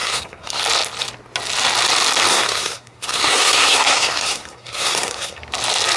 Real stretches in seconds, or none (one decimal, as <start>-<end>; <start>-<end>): 0.6-2.3; 5.4-6.0